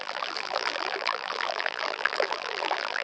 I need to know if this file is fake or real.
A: fake